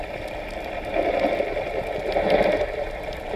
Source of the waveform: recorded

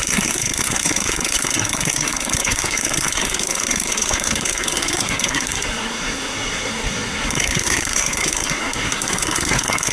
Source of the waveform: remade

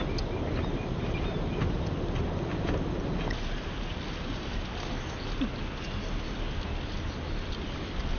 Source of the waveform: recorded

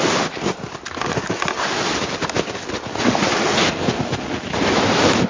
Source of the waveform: recorded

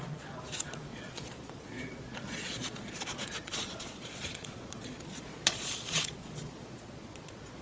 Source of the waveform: remade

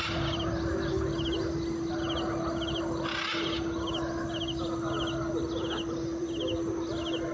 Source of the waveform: recorded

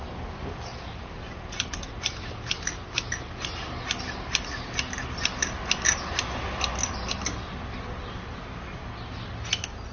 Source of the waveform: recorded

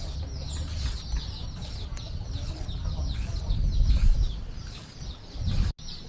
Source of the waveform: recorded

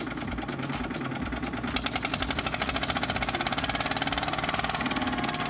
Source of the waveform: recorded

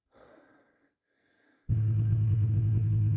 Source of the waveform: remade